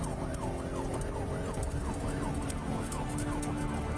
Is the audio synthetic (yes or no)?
no